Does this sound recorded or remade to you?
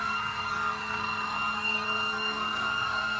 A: remade